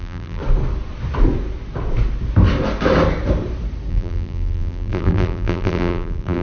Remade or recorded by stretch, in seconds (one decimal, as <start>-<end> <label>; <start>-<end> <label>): 0.0-0.4 remade; 0.4-3.9 recorded; 3.9-6.4 remade